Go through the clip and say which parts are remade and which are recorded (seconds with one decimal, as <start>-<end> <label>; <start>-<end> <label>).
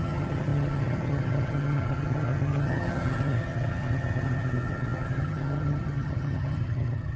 0.0-7.2 remade